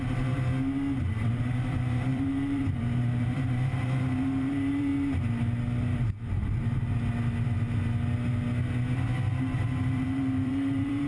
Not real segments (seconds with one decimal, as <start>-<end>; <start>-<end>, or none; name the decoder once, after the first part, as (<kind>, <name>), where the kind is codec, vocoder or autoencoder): 0.0-0.5 (vocoder, BigVGAN v2); 1.3-4.9; 9.6-11.1